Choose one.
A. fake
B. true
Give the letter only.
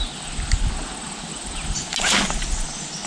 B